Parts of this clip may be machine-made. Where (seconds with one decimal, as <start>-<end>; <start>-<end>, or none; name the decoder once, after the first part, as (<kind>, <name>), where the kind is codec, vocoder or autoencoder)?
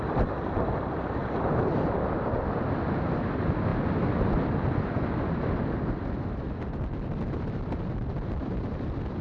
3.7-4.3 (vocoder, BigVGAN v2)